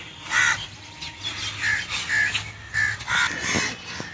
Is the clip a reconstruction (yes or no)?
no